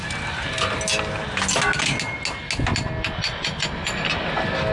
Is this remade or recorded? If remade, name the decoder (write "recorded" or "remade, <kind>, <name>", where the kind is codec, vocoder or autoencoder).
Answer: recorded